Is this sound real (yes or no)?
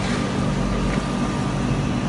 yes